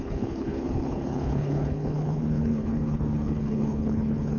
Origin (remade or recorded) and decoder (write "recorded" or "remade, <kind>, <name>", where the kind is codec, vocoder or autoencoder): remade, codec, HILCodec